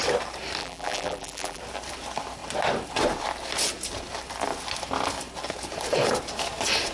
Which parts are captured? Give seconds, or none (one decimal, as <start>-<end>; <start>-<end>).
0.0-0.6; 1.6-6.9